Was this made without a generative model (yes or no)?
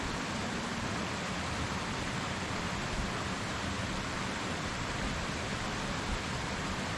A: yes